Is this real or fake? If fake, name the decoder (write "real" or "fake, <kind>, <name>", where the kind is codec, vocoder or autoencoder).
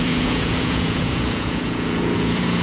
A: fake, vocoder, Vocos